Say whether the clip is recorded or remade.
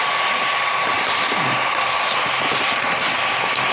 recorded